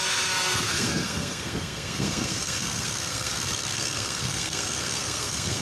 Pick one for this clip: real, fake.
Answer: fake